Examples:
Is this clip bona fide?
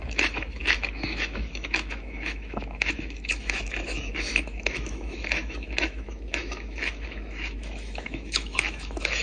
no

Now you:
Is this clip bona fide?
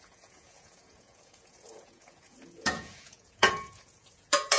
no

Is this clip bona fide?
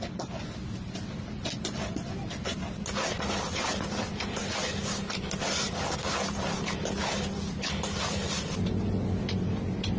yes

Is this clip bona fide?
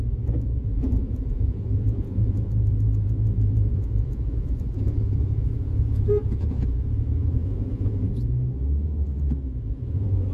no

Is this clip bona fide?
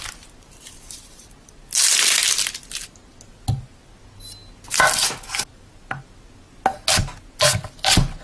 yes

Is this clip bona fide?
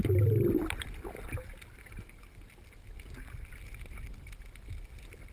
yes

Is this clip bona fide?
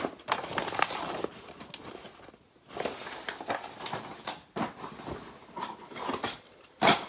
yes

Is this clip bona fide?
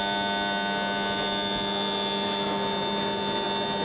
yes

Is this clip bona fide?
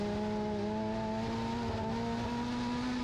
yes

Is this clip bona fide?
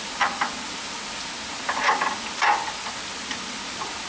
yes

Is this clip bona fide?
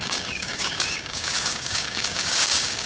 no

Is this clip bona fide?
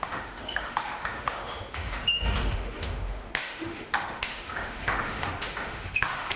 no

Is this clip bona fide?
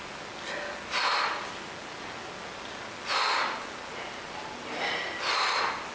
yes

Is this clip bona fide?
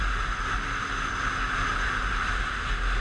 yes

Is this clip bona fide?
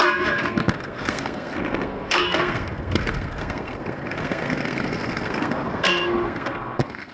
no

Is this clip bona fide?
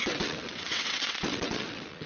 no